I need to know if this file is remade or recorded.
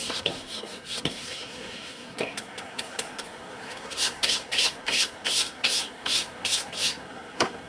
remade